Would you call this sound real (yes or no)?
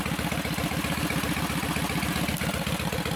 yes